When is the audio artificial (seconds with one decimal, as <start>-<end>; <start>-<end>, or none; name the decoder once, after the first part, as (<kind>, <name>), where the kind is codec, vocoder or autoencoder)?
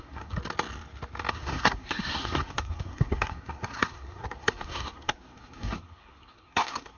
0.0-0.4 (codec, SNAC); 1.3-7.0